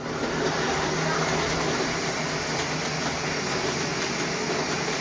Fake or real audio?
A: real